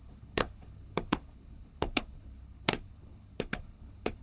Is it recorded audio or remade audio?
remade